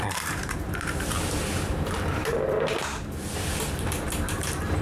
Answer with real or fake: fake